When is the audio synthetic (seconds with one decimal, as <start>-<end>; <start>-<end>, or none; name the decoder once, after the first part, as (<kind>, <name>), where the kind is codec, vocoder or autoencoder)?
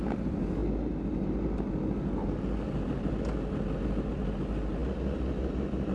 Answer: none